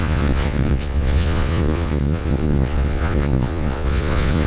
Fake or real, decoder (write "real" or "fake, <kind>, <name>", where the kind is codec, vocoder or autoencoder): fake, vocoder, Vocos